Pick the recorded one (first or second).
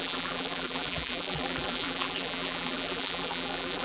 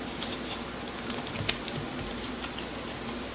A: second